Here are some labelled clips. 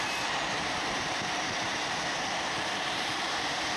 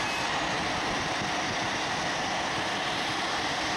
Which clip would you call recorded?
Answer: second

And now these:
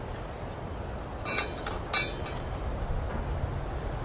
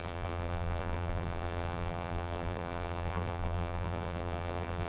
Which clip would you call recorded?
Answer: first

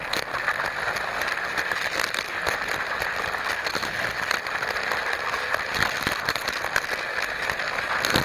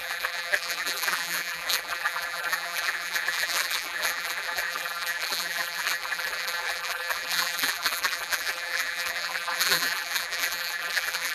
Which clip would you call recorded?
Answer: first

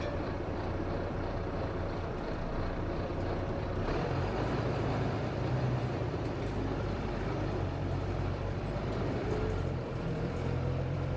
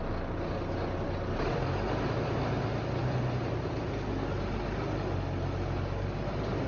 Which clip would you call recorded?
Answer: second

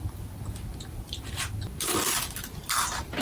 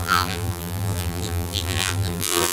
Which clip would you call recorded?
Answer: first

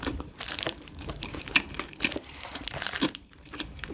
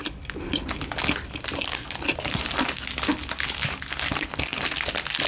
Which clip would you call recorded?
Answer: second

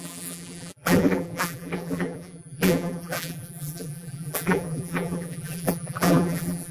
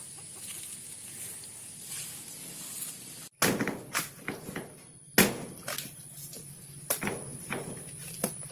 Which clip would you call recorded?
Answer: second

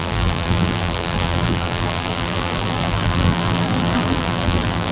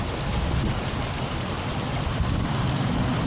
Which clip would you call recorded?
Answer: second